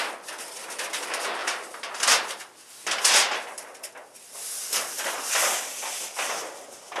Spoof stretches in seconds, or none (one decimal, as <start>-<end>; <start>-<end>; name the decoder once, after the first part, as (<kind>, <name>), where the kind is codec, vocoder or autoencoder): 1.4-2.4 (vocoder, BigVGAN v2)